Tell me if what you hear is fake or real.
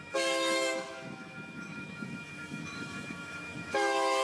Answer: fake